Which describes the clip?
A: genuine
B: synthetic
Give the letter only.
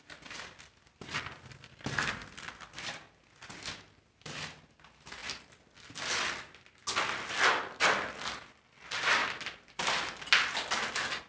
A